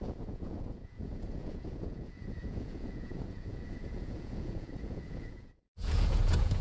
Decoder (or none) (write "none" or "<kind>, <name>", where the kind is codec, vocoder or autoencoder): vocoder, Vocos